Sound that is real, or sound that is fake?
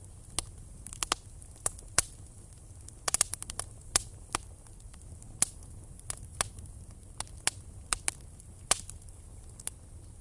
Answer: real